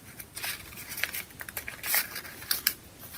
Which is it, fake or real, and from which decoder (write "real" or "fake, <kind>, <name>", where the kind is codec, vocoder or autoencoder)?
real